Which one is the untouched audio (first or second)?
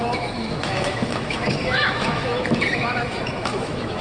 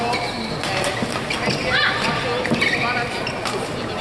second